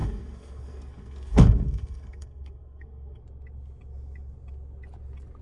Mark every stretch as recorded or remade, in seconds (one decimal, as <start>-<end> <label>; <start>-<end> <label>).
0.0-3.2 remade; 3.2-5.4 recorded